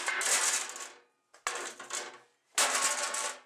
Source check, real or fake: real